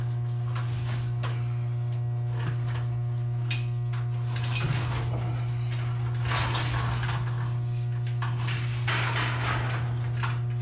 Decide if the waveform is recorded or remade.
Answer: recorded